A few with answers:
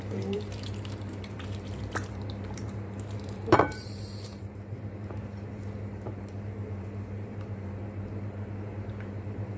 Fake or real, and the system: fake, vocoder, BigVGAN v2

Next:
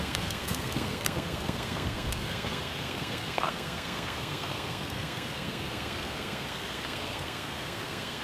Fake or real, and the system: fake, codec, SNAC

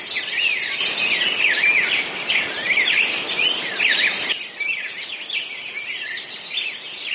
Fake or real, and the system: real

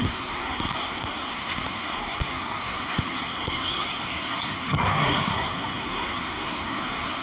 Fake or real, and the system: fake, codec, SNAC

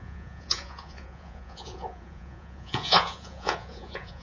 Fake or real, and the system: fake, vocoder, Vocos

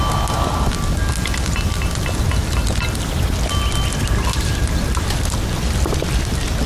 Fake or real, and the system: real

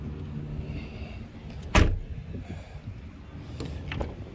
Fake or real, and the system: real